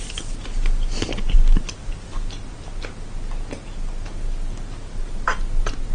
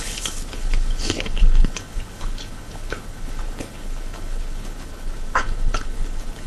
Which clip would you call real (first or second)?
first